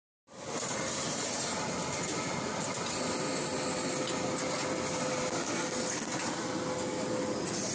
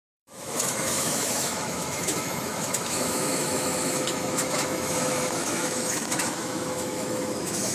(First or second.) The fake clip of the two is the second